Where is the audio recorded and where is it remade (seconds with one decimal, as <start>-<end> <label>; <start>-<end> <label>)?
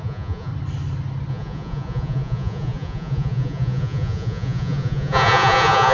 0.0-0.5 remade; 0.5-1.3 recorded; 1.3-5.9 remade